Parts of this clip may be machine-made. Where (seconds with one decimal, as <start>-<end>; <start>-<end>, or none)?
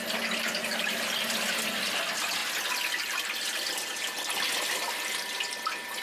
none